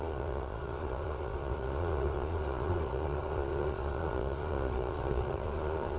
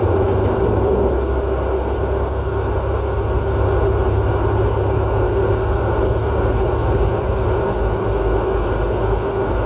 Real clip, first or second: second